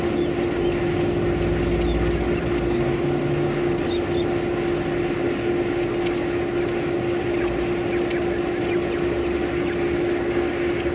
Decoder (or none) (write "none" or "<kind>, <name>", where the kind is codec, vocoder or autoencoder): none